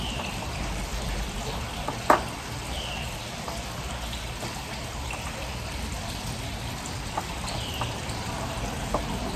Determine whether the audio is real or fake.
fake